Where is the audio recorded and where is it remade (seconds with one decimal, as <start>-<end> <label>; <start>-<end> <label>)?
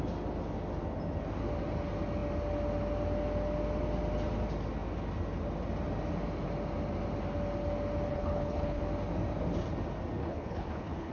0.0-8.1 recorded; 8.1-8.8 remade; 8.8-10.2 recorded; 10.2-11.1 remade